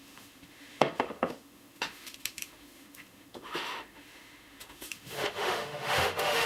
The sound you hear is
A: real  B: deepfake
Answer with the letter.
B